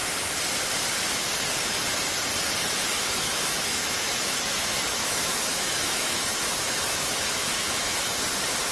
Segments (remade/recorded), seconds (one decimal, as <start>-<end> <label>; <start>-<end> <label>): 0.0-2.9 recorded; 2.9-8.1 remade; 8.1-8.7 recorded